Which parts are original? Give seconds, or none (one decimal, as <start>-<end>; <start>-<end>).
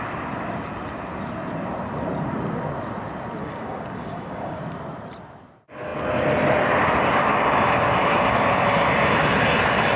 0.0-3.4; 4.6-7.3; 8.4-10.0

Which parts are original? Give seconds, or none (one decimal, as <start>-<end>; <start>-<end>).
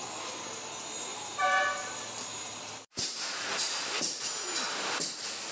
0.0-1.1; 4.3-5.5